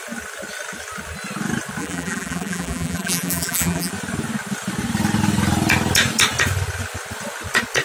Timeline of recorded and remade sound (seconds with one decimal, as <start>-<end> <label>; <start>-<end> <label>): 0.0-1.8 recorded; 1.8-3.9 remade; 3.9-7.8 recorded